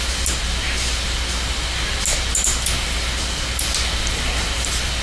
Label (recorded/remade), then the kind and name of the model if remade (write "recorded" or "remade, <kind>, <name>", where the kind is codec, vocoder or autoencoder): recorded